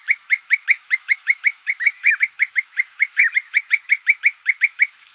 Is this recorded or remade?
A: remade